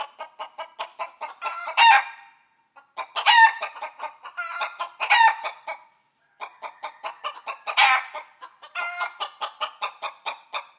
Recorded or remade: recorded